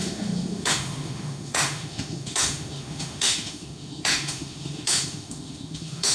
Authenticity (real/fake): fake